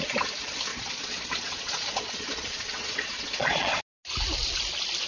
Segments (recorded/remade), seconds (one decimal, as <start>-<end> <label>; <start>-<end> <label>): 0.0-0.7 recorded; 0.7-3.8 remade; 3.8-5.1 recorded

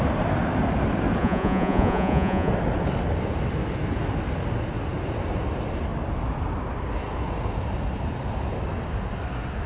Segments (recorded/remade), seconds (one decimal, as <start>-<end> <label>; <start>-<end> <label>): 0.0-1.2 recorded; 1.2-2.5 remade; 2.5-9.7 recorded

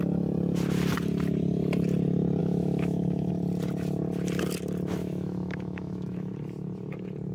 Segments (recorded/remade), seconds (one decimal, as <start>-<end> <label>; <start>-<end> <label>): 0.0-2.4 recorded; 2.4-3.3 remade; 3.3-5.0 recorded; 5.0-6.3 remade; 6.3-7.3 recorded

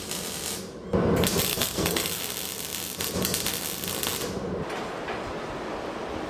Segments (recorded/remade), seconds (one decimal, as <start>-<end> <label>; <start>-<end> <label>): 0.0-1.5 recorded; 1.5-2.2 remade; 2.2-6.3 recorded